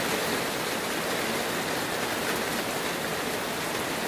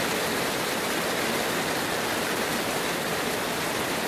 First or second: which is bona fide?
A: first